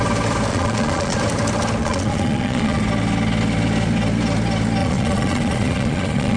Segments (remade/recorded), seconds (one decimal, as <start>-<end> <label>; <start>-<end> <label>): 0.0-0.5 recorded; 0.5-1.2 remade; 1.2-1.8 recorded; 1.8-2.8 remade; 2.8-4.8 recorded; 4.8-6.4 remade